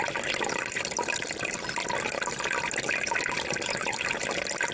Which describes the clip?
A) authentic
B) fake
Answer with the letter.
A